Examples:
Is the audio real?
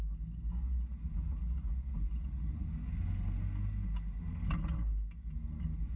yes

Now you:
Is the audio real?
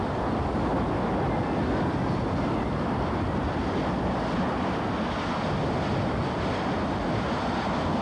yes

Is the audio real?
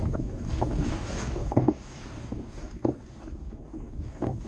no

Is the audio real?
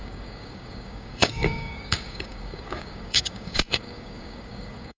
no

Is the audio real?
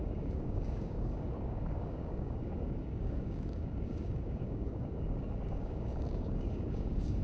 no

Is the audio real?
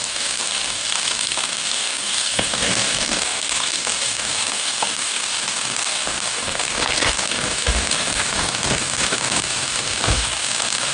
no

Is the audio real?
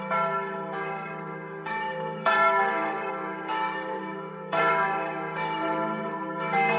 no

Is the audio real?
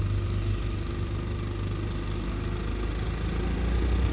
yes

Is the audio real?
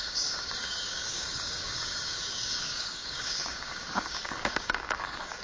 no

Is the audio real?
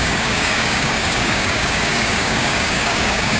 no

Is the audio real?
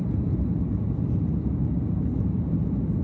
yes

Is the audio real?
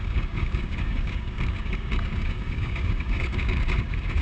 no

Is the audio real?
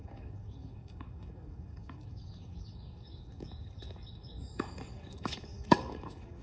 no